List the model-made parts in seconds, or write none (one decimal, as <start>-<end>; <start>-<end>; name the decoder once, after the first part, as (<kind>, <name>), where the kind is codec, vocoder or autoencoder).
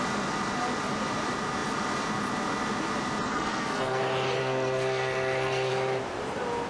3.3-4.0 (codec, SNAC); 4.4-5.7